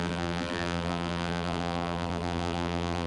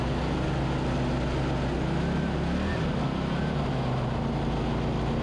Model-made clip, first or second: first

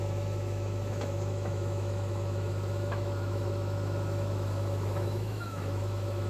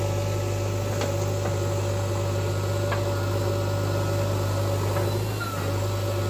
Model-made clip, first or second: first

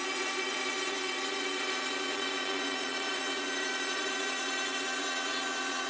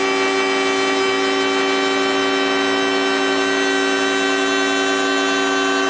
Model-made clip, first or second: first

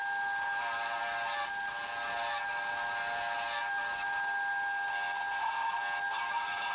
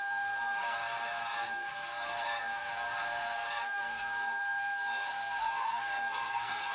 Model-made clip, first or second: second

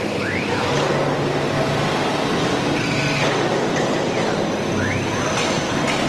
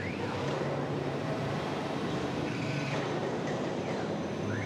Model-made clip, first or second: second